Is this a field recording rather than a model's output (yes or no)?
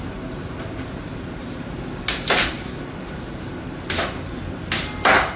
yes